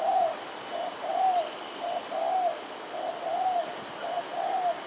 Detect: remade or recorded recorded